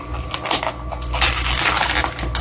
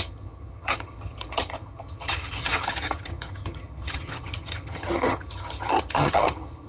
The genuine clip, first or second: first